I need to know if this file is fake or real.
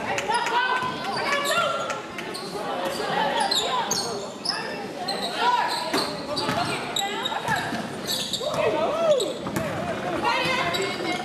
real